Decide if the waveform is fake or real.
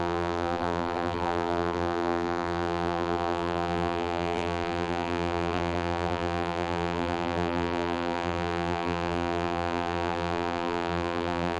fake